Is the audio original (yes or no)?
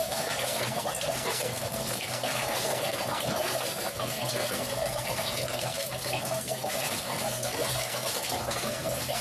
no